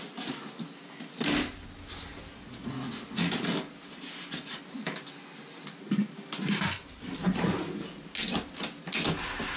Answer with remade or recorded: recorded